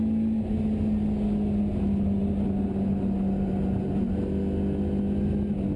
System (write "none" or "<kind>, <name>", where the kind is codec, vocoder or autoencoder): none